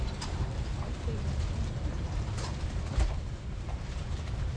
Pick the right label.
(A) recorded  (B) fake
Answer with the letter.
B